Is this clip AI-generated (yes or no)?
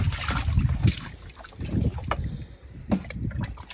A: no